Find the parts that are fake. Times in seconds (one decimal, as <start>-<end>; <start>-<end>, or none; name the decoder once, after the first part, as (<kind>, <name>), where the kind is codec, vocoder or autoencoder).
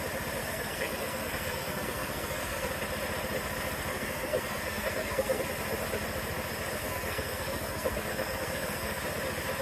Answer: 0.4-2.7 (codec, SNAC); 3.9-5.4; 6.8-9.0